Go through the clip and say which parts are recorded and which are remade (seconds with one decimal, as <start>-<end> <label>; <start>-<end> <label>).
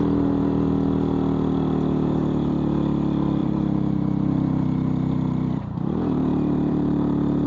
0.0-3.4 recorded; 3.4-7.5 remade